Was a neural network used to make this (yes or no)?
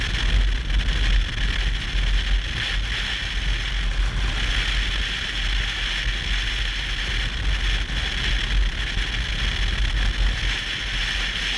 no